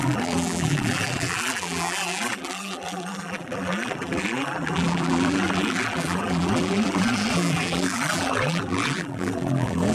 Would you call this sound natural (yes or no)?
no